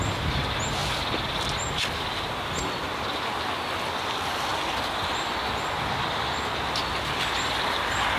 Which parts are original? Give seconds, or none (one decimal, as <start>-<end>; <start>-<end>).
0.0-8.2